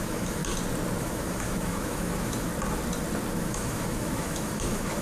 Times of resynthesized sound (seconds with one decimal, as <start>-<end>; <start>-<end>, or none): 0.0-0.4; 1.0-2.5; 3.3-5.0